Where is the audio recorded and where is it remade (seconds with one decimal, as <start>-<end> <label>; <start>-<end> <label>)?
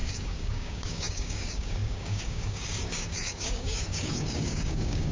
0.0-5.1 remade